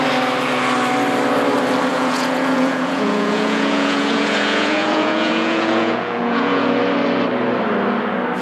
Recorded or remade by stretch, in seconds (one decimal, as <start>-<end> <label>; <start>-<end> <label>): 0.0-1.9 recorded; 1.9-6.8 remade; 6.8-8.4 recorded